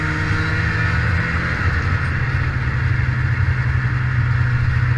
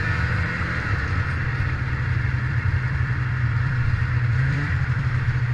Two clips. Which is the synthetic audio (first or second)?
second